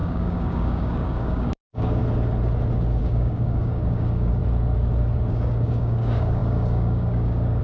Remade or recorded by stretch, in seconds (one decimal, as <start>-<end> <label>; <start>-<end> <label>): 0.0-2.0 remade; 2.0-3.0 recorded; 3.0-4.4 remade; 4.4-5.3 recorded; 5.3-7.6 remade